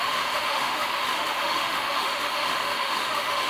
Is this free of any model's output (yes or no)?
no